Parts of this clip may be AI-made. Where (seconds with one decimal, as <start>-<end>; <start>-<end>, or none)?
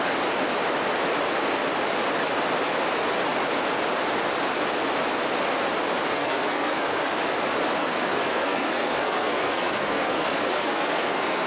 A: 6.1-7.1; 7.8-11.5